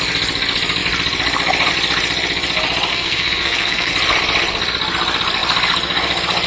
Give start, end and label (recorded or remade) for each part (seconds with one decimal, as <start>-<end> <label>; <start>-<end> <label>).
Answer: 0.0-2.9 recorded; 2.9-3.9 remade; 3.9-6.5 recorded

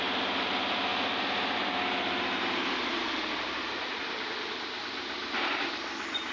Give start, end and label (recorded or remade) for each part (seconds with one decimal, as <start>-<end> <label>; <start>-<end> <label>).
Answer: 0.0-6.3 recorded